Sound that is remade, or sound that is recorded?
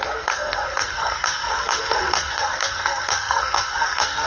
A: remade